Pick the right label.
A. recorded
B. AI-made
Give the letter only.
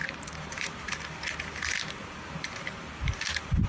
B